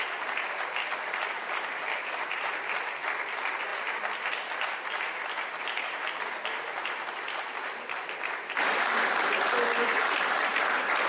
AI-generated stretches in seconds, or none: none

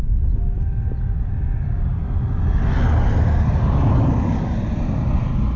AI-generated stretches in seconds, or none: none